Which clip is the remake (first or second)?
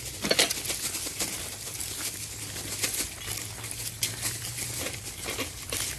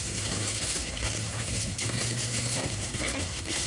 second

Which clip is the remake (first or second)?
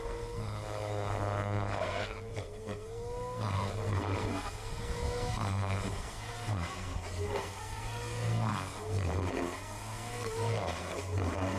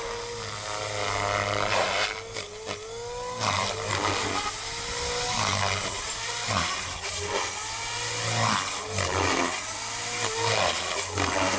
first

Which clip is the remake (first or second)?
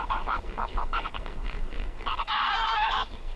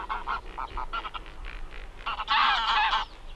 first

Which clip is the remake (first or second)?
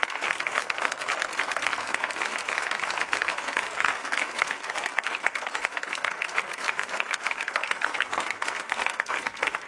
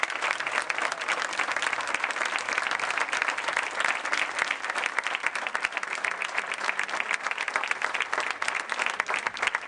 first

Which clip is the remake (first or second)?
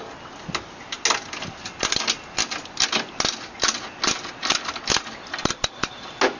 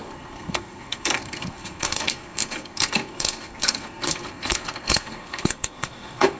second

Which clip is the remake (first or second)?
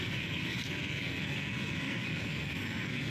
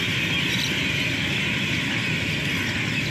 first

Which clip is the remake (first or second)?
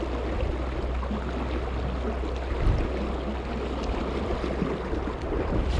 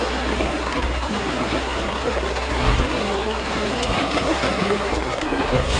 second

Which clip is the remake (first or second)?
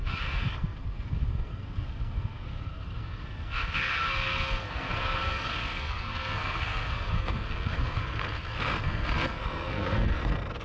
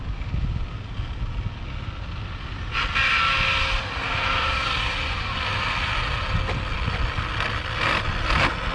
first